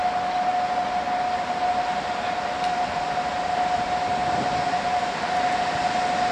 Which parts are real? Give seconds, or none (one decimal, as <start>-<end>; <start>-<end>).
0.0-6.3